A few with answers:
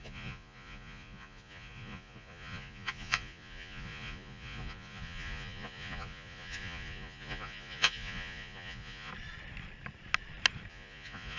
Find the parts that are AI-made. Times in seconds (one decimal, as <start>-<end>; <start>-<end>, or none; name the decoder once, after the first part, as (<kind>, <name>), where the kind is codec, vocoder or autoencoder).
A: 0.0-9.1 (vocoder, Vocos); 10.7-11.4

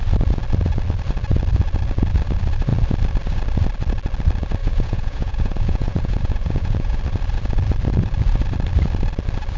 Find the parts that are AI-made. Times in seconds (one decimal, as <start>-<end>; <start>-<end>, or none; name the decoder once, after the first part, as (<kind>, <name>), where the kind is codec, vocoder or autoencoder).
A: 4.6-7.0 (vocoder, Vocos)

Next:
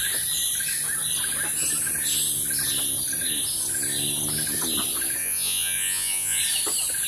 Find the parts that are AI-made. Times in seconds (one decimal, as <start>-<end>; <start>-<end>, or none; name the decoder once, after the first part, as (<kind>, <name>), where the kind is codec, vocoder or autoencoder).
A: 5.2-6.4 (vocoder, Vocos)

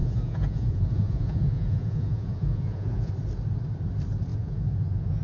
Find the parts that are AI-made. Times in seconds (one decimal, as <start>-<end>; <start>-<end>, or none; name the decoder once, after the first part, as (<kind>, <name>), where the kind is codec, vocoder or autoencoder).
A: 0.0-3.1 (vocoder, Vocos); 4.3-5.2